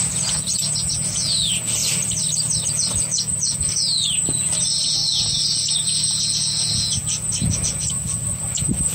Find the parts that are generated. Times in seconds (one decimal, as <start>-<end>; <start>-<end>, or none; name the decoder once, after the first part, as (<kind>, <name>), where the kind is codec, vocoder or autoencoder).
0.0-1.8 (vocoder, Vocos); 2.7-8.9